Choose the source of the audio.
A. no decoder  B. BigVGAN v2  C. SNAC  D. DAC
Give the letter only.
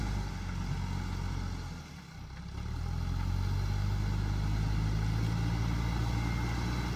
A